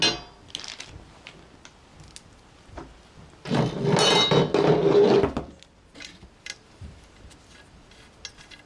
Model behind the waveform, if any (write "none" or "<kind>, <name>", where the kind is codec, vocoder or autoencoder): none